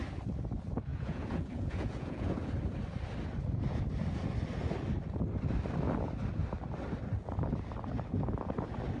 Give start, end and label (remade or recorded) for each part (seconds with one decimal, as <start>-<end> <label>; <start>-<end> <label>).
0.0-0.9 recorded; 0.9-2.5 remade; 2.5-9.0 recorded